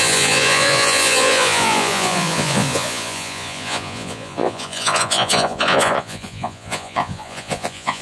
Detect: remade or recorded remade